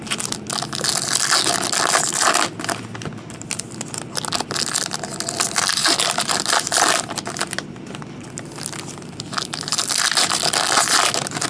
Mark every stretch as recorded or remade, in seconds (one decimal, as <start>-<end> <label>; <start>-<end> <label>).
0.0-11.5 recorded

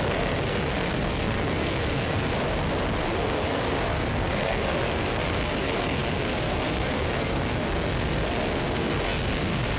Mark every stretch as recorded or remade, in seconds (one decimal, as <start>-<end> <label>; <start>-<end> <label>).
0.0-2.3 remade; 2.3-3.0 recorded; 3.0-9.8 remade

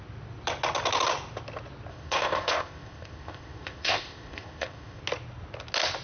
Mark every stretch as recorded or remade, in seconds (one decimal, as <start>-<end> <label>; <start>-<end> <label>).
0.0-1.9 recorded; 1.9-5.0 remade; 5.0-6.0 recorded